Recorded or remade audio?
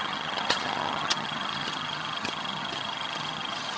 remade